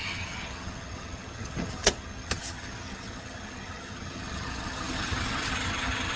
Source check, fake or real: fake